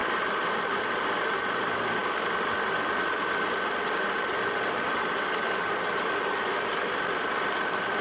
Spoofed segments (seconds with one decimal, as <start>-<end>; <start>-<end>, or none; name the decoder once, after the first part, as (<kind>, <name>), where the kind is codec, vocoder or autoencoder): 0.0-2.0 (vocoder, BigVGAN v2); 4.4-8.0